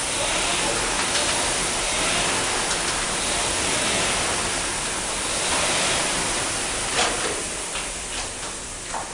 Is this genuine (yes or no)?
yes